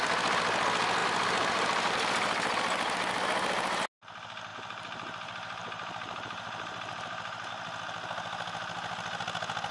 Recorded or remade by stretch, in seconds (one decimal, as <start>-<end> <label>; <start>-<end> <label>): 0.0-1.0 recorded; 1.0-1.9 remade; 1.9-4.5 recorded; 4.5-7.5 remade; 7.5-9.7 recorded